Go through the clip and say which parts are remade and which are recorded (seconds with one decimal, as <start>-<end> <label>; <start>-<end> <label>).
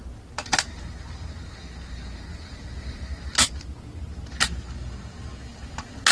0.0-6.1 recorded